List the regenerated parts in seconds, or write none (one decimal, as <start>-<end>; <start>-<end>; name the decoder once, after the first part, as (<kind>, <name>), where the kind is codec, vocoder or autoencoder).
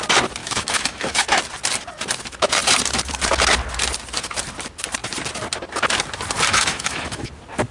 0.4-1.4 (autoencoder, DAC-VAE); 6.5-7.3